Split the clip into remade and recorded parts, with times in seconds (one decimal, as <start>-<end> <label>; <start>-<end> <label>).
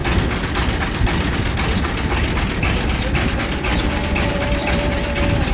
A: 0.0-3.7 recorded; 3.7-4.7 remade; 4.7-5.5 recorded